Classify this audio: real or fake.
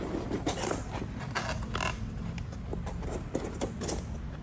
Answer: real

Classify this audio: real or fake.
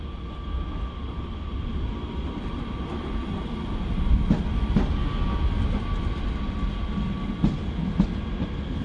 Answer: real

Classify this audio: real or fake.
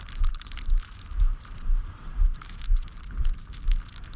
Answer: fake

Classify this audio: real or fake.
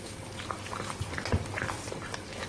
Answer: real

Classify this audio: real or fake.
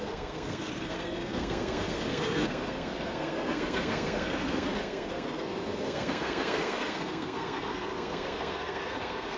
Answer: fake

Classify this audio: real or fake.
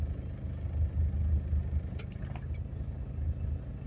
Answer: real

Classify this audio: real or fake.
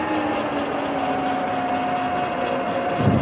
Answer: real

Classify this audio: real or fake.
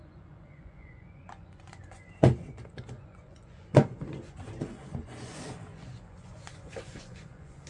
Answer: fake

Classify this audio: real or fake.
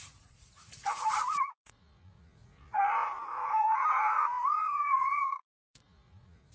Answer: fake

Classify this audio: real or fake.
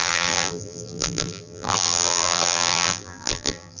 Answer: fake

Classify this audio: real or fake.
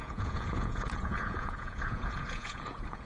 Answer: fake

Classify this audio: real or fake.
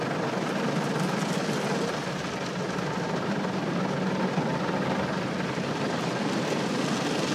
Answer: real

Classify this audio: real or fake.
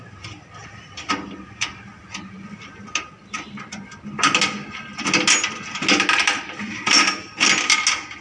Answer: real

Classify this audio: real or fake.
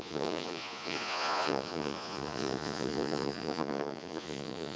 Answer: fake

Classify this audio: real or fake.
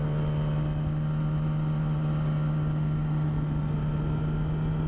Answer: real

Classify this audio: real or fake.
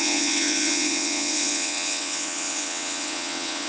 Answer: fake